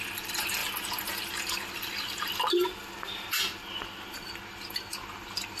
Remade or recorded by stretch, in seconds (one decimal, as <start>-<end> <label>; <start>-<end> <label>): 0.0-5.6 recorded